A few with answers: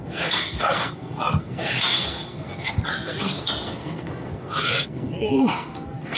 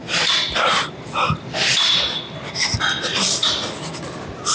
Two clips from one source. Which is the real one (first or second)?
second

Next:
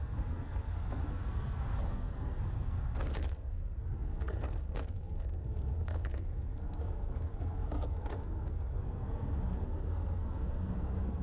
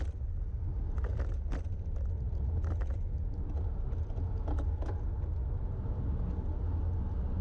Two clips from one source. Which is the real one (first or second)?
second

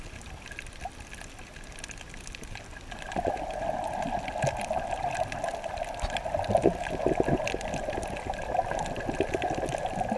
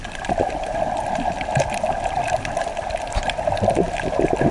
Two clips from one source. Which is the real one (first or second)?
first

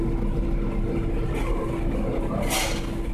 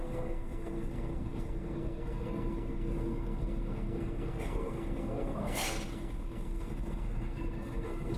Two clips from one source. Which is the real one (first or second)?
first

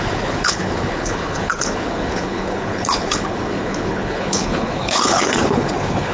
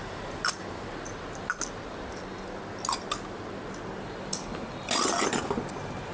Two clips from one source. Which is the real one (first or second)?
second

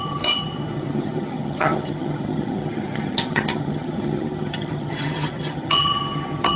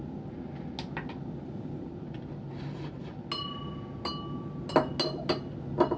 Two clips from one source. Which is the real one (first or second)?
second